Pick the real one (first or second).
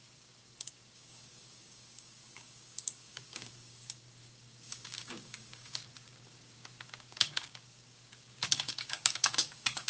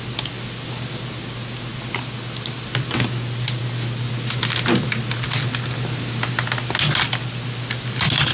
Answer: second